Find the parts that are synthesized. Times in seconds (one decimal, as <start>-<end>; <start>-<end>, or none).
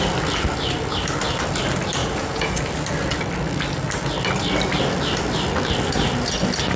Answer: 2.0-2.6